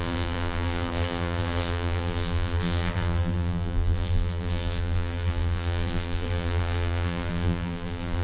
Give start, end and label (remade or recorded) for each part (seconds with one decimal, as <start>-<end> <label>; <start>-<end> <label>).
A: 0.0-8.2 remade

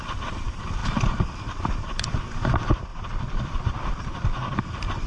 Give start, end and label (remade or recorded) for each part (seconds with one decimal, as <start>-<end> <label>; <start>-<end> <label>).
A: 0.0-2.9 remade; 2.9-3.9 recorded; 3.9-5.1 remade

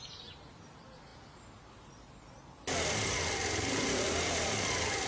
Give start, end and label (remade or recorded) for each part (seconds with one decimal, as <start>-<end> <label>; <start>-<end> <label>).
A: 0.0-5.1 recorded